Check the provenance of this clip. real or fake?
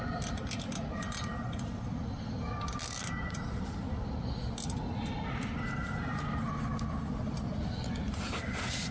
real